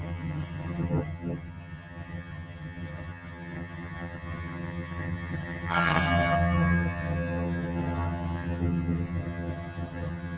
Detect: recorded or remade remade